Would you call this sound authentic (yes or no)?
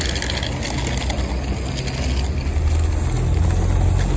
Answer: yes